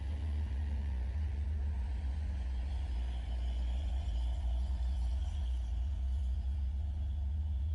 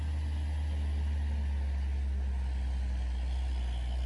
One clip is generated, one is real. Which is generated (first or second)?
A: first